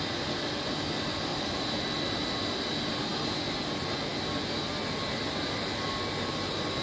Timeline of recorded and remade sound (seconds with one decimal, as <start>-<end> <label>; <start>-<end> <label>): 0.0-1.3 recorded; 1.3-1.8 remade; 1.8-6.8 recorded